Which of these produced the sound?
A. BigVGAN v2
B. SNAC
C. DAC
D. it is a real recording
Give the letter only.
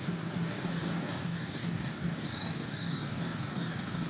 C